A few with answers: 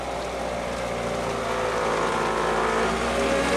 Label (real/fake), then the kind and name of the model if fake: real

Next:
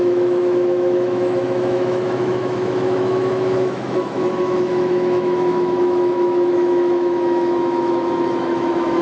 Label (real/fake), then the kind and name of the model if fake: fake, autoencoder, DAC-VAE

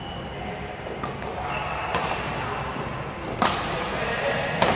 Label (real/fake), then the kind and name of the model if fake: real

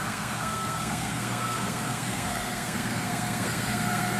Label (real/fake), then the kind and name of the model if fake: fake, codec, SNAC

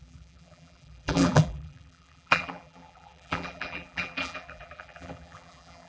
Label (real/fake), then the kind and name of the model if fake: fake, vocoder, BigVGAN v2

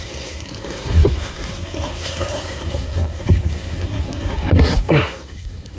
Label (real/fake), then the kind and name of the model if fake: fake, codec, SNAC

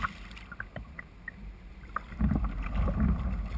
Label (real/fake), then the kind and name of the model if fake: real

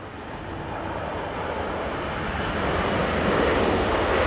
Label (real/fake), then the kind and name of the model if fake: real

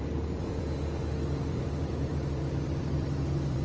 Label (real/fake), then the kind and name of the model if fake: fake, vocoder, BigVGAN v2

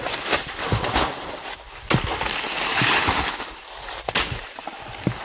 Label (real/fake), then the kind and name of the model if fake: real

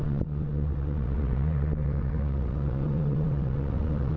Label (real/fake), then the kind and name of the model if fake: fake, vocoder, WaveNeXt